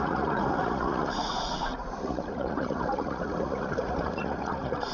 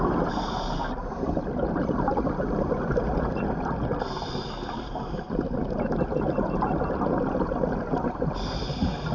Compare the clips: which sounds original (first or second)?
second